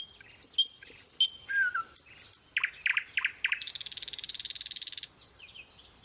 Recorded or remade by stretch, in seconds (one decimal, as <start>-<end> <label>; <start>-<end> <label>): 0.0-6.0 recorded